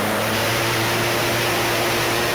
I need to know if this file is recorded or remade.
remade